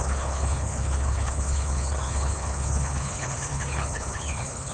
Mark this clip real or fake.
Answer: fake